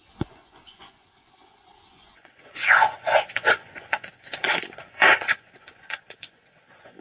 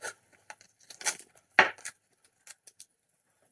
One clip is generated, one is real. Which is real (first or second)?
second